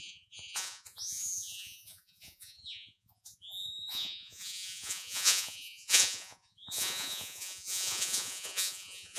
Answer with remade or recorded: remade